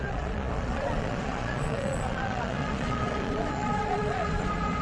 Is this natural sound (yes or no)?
no